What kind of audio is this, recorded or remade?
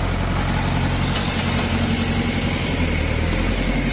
recorded